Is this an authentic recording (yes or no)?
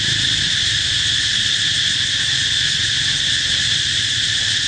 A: yes